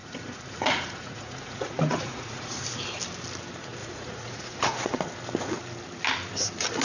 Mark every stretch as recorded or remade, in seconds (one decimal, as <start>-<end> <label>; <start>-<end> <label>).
0.0-2.6 remade; 2.6-3.8 recorded; 3.8-5.0 remade; 5.0-6.8 recorded